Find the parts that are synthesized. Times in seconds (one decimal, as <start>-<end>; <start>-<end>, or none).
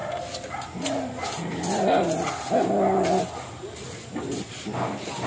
none